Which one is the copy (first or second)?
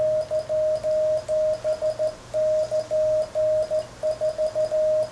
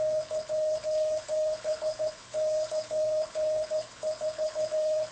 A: second